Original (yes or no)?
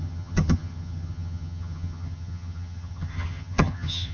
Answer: no